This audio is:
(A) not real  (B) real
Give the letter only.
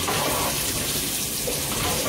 B